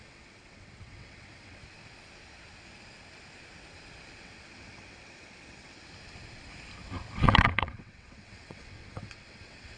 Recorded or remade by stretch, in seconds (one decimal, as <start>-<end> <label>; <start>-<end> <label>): 0.0-1.6 remade; 1.6-4.2 recorded; 4.2-5.8 remade; 5.8-7.1 recorded; 7.1-9.8 remade